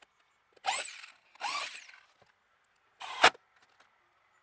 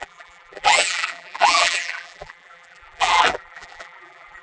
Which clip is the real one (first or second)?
first